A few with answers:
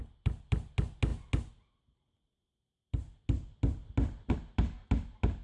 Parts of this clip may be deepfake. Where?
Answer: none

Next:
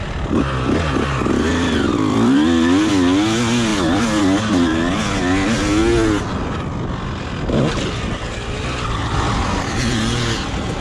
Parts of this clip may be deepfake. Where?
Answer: 1.5-2.9 (vocoder, BigVGAN v2); 3.7-4.2; 9.0-9.8

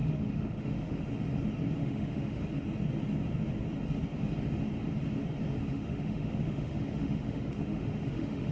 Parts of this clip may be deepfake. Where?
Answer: 0.0-1.0 (autoencoder, DAC-VAE); 1.8-2.4; 5.7-8.5

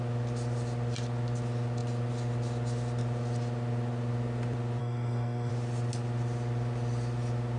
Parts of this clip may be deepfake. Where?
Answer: 4.8-5.5 (codec, SNAC)